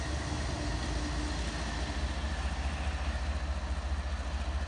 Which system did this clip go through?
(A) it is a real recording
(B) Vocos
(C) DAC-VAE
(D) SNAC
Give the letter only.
A